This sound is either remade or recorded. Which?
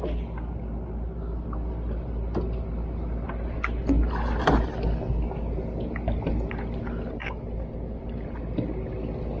recorded